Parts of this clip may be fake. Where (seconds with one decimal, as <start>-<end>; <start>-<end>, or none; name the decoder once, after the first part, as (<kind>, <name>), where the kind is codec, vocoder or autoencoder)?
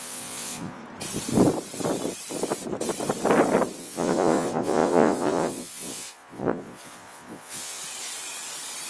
0.0-0.8 (vocoder, Vocos); 3.8-7.8